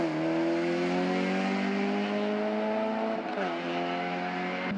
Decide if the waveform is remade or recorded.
recorded